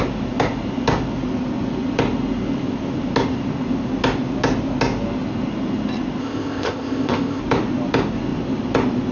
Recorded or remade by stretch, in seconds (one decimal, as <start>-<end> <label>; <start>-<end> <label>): 0.0-6.2 recorded; 6.2-7.4 remade; 7.4-9.1 recorded